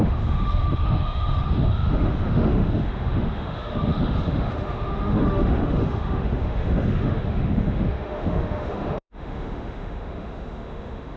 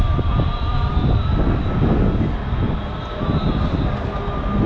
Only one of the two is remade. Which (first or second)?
first